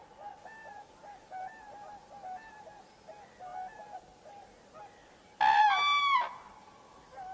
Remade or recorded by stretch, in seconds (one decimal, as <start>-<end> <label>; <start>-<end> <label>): 0.0-7.3 recorded